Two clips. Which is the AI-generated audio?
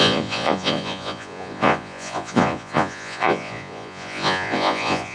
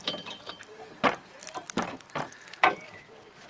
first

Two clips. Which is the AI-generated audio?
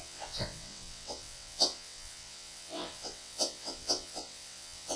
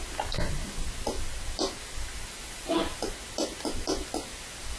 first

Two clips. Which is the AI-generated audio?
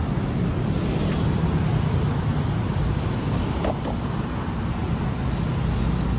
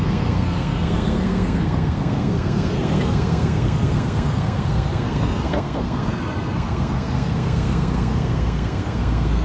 second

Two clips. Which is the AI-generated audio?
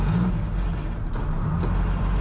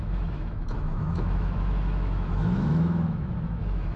second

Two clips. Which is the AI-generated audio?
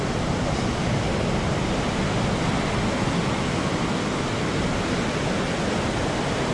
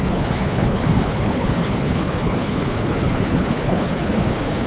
second